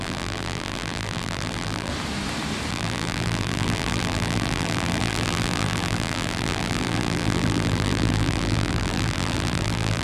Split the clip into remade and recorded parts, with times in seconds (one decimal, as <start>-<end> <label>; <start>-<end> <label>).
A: 0.0-1.9 remade; 1.9-2.7 recorded; 2.7-10.0 remade